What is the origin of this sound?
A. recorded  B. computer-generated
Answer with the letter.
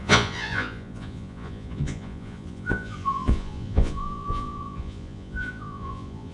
B